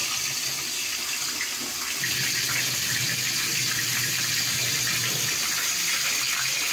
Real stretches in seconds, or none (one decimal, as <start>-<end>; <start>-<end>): 0.0-6.7